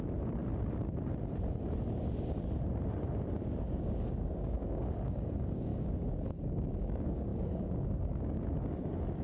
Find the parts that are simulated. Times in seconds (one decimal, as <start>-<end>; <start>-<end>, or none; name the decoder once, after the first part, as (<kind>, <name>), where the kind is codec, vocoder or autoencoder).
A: 0.0-0.4 (codec, DAC); 3.3-9.2